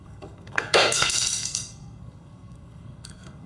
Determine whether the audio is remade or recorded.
remade